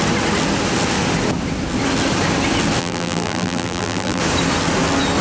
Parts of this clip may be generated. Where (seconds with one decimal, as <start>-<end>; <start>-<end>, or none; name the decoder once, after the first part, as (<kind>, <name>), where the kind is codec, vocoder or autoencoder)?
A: 2.8-4.2 (vocoder, BigVGAN v2)